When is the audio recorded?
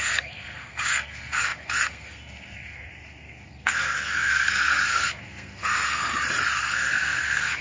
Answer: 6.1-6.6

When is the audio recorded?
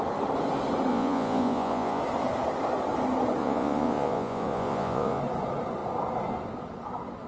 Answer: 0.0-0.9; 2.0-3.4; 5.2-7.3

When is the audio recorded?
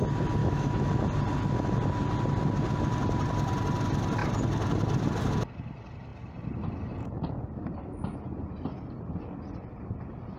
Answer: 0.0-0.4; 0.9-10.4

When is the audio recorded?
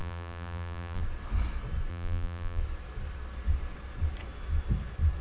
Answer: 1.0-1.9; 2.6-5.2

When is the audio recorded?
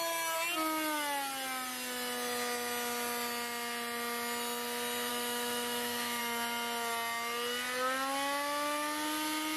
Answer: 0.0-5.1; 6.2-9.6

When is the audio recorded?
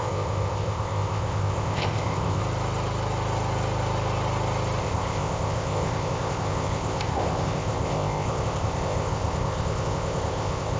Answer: 2.4-4.8